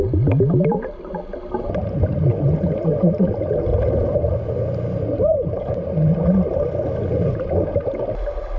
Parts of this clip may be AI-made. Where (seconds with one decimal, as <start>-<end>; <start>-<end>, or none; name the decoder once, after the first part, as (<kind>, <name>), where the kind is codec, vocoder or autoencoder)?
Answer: none